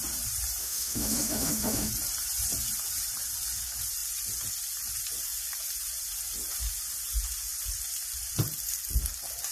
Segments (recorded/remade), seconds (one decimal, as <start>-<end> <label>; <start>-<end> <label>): 0.0-0.6 recorded; 0.6-1.9 remade; 1.9-9.5 recorded